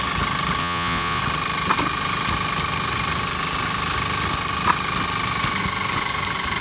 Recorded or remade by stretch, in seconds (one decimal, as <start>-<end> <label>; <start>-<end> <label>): 0.0-0.6 recorded; 0.6-1.2 remade; 1.2-6.6 recorded